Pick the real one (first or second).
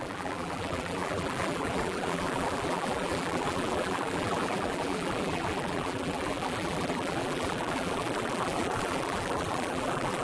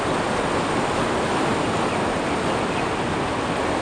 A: second